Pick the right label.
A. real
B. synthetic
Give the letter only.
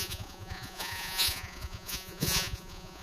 B